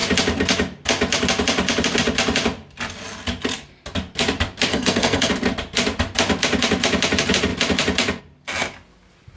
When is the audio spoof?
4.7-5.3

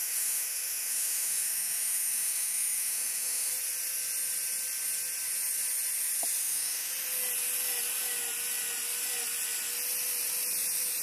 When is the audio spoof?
0.0-3.5; 6.4-6.9

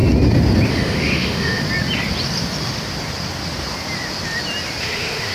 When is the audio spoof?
0.7-1.6; 4.8-5.3